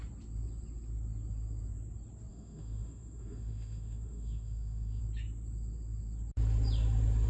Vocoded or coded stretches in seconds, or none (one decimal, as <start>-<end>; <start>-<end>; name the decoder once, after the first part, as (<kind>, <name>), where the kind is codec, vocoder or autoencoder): 2.3-5.0 (autoencoder, DAC-VAE)